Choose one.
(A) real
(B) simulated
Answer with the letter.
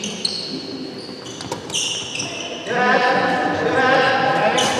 A